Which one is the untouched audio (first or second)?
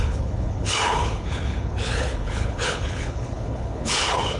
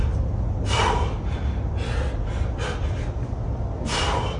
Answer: second